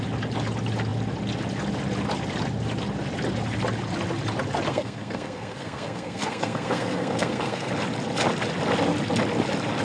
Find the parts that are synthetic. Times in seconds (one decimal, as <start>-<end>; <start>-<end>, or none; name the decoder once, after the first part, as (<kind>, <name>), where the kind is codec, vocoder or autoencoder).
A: 4.7-7.7 (codec, SNAC)